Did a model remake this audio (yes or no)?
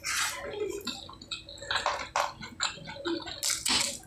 no